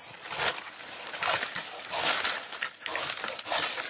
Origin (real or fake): real